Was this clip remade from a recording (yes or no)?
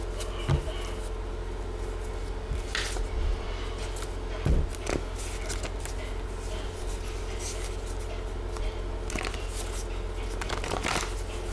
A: no